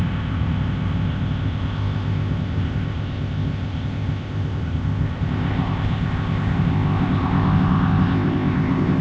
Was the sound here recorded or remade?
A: remade